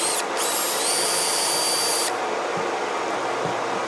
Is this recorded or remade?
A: recorded